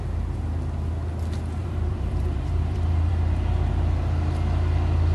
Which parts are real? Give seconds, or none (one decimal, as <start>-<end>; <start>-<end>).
0.0-1.6; 3.1-5.1